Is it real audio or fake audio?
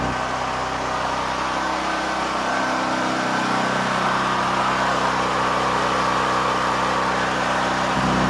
real